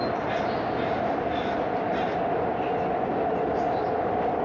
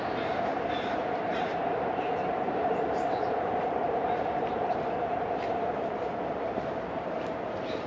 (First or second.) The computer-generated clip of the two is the second